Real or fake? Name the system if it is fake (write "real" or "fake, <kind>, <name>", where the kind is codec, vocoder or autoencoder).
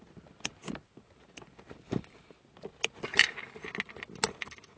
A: real